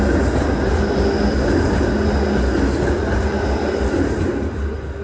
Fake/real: real